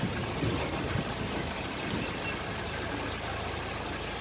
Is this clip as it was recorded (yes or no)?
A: yes